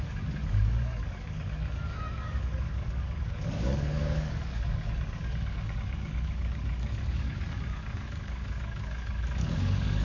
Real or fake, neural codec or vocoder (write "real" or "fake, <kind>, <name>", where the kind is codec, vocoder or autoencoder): fake, codec, DAC